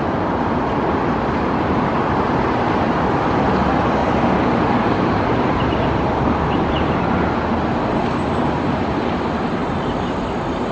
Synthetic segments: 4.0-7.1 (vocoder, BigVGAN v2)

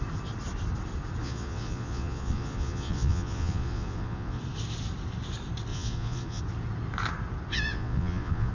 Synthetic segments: 1.2-4.4 (vocoder, Vocos); 5.7-6.4; 7.5-8.5

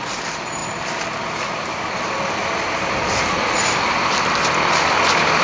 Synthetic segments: none

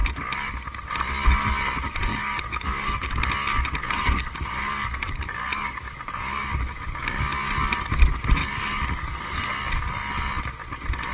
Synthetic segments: 2.1-3.1 (codec, DAC); 3.8-7.2; 8.4-9.4

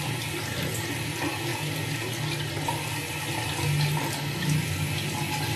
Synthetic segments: none